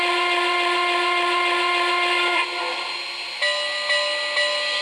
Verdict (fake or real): real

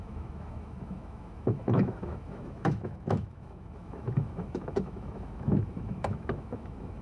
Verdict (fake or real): fake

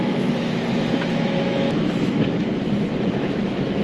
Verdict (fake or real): fake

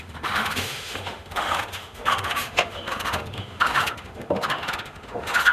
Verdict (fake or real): fake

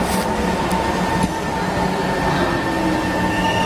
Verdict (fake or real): real